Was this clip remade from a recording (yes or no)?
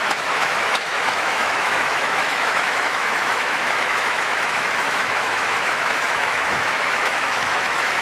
yes